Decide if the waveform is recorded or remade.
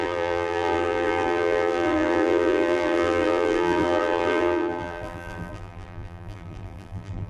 remade